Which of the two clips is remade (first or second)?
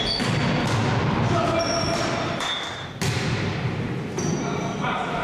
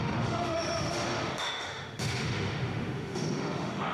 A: second